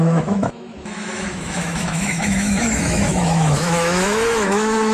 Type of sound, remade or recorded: remade